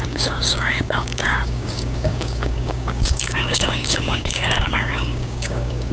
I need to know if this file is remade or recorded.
remade